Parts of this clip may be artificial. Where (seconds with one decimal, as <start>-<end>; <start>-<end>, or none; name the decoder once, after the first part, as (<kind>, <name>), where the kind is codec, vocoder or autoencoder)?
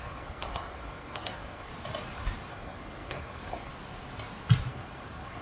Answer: 0.0-1.7 (codec, SNAC); 2.5-3.7; 4.7-5.4